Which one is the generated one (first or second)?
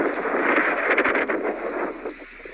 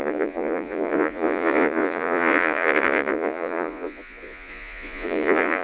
second